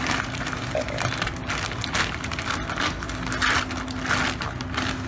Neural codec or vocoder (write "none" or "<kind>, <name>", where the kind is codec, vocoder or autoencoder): none